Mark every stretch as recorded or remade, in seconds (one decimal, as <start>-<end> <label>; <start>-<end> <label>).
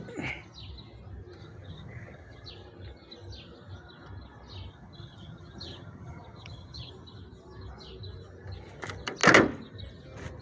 0.0-1.4 recorded; 1.4-2.5 remade; 2.5-4.7 recorded; 4.7-6.9 remade; 6.9-10.4 recorded